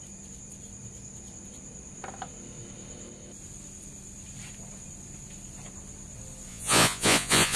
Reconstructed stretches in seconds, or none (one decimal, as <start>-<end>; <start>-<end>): 6.5-7.6